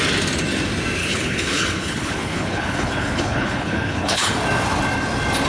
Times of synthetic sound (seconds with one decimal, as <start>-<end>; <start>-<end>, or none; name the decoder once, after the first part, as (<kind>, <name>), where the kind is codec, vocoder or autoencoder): 1.0-4.3 (codec, HILCodec)